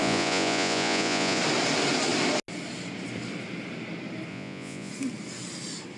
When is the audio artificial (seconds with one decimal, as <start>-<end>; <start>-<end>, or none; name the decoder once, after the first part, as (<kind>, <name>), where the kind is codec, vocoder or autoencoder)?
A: 0.0-1.4 (vocoder, Vocos); 4.3-4.9